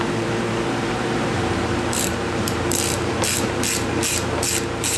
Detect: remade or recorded remade